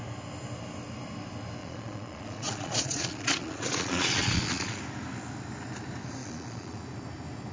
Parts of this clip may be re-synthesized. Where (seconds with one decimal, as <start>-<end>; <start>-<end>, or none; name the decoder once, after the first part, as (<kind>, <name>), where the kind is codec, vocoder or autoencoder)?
1.6-4.8 (vocoder, Vocos); 6.2-6.8